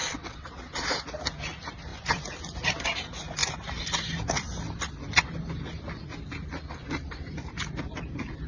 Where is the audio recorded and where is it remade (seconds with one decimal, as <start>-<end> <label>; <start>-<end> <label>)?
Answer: 0.0-0.5 remade; 0.5-8.5 recorded